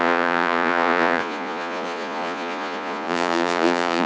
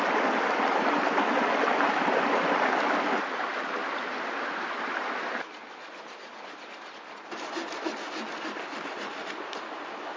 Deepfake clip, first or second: first